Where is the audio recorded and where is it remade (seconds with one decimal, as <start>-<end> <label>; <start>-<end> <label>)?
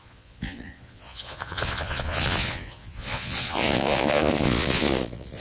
0.0-5.4 remade